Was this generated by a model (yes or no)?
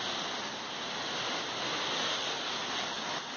no